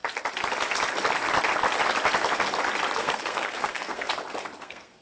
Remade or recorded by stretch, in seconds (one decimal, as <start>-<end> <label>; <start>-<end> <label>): 0.0-3.0 recorded; 3.0-4.1 remade; 4.1-4.6 recorded; 4.6-5.0 remade